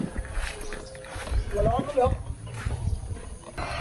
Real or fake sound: fake